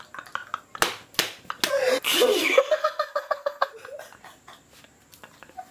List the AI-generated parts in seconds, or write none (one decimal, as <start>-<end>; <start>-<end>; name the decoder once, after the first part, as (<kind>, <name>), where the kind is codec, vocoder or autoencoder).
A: 2.4-3.7 (codec, SNAC)